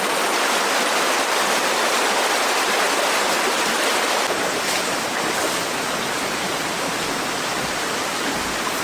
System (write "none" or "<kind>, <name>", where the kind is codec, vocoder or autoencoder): none